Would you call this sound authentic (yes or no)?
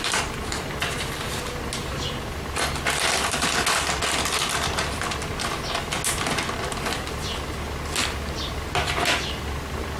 yes